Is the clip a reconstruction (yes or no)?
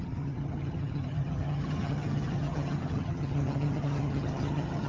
yes